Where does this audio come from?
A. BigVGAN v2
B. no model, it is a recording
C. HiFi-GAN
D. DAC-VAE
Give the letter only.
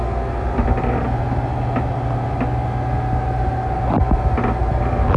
B